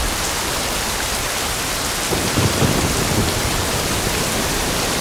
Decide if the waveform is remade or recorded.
remade